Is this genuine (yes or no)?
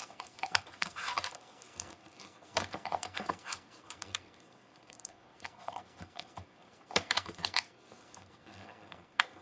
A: no